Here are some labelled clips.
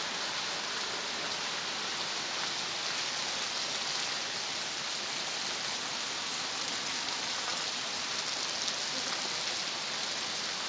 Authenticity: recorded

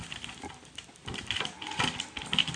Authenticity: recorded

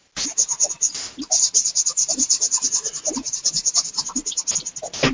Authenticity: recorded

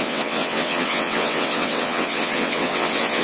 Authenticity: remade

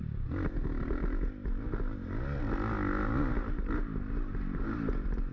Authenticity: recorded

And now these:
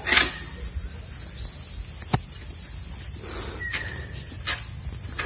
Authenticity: recorded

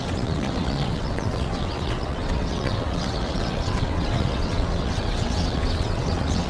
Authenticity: remade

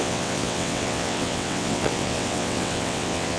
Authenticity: remade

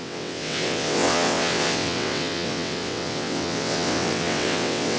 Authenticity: remade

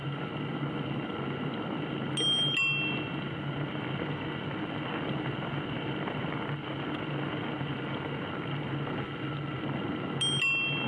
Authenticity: recorded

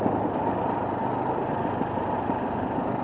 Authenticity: recorded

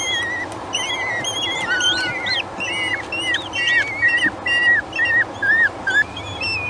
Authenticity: recorded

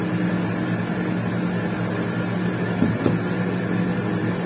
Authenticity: recorded